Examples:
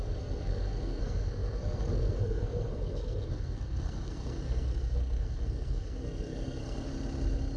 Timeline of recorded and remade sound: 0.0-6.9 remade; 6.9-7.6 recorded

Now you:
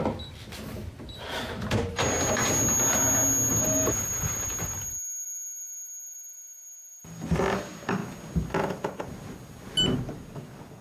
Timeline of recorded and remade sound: 0.0-3.5 recorded; 3.5-7.4 remade; 7.4-10.8 recorded

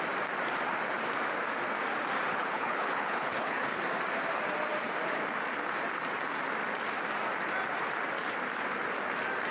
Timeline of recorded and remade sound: 0.0-2.3 recorded; 2.3-3.8 remade; 3.8-9.5 recorded

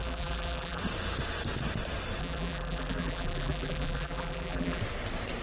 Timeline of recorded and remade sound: 0.0-0.8 remade; 0.8-2.2 recorded; 2.2-4.8 remade; 4.8-5.4 recorded

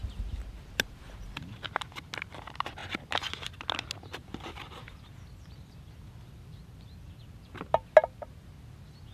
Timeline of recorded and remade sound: 0.0-4.2 recorded; 4.2-7.5 remade; 7.5-9.1 recorded